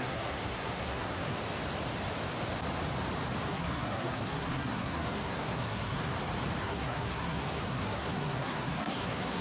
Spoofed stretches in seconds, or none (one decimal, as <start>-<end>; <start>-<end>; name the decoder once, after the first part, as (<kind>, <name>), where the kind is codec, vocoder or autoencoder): 0.0-1.4 (codec, SNAC); 3.5-6.0; 6.6-9.4